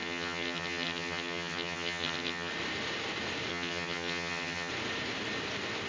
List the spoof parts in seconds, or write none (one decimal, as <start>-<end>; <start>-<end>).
0.0-2.5; 3.5-4.7